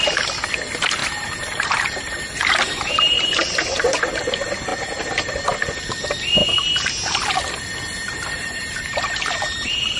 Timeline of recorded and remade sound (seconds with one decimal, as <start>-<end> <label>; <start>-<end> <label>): 0.0-1.0 recorded; 1.0-4.2 remade; 4.2-4.7 recorded; 4.7-5.5 remade; 5.5-8.1 recorded; 8.1-10.0 remade